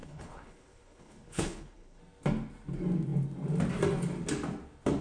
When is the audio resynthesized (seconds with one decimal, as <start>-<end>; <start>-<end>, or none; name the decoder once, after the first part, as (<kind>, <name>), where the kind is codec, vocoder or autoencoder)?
0.0-2.0 (codec, HILCodec)